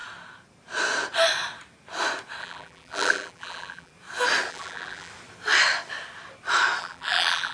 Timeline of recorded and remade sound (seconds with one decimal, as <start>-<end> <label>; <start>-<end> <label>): 0.0-2.4 recorded; 2.4-3.9 remade; 3.9-4.5 recorded; 4.5-5.1 remade; 5.1-6.8 recorded; 6.8-7.5 remade